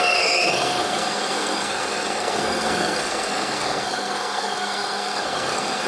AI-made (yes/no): yes